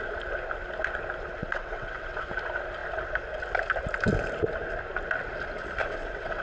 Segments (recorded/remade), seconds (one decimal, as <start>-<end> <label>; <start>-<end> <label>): 0.0-1.4 recorded; 1.4-2.3 remade; 2.3-5.8 recorded; 5.8-6.4 remade